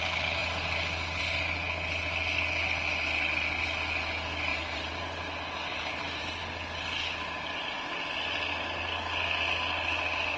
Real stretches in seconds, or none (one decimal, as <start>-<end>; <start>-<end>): 0.0-4.5; 5.0-5.7; 6.2-10.4